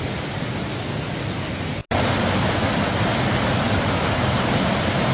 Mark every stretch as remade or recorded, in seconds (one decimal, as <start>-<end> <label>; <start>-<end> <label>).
0.0-5.1 recorded

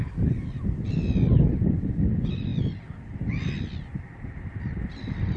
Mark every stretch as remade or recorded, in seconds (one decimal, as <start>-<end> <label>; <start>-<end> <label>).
0.0-5.4 recorded

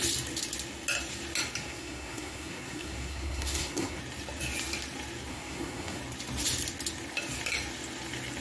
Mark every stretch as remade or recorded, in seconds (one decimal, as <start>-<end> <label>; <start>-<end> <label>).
0.0-1.6 recorded; 1.6-4.0 remade; 4.0-5.3 recorded; 5.3-6.0 remade; 6.0-8.4 recorded

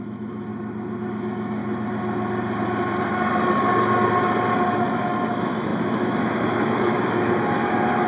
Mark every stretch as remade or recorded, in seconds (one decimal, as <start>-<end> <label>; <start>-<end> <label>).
0.0-0.5 remade; 0.5-1.1 recorded; 1.1-1.6 remade; 1.6-4.7 recorded; 4.7-8.1 remade

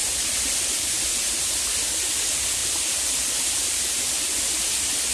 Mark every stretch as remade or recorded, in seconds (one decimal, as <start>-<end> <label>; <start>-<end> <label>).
0.0-5.1 recorded

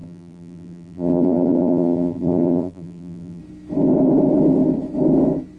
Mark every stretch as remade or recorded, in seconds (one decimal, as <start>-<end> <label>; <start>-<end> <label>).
0.0-3.4 remade; 3.4-5.6 recorded

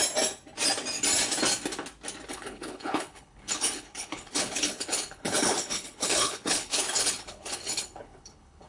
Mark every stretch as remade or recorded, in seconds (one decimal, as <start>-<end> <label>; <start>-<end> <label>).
0.0-2.3 recorded; 2.3-8.7 remade

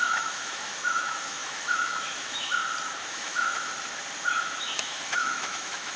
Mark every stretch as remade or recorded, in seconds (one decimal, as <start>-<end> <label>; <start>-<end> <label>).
0.0-2.6 remade; 2.6-3.1 recorded; 3.1-3.7 remade; 3.7-4.4 recorded; 4.4-6.0 remade